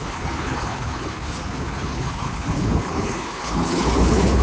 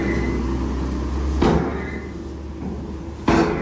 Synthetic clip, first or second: first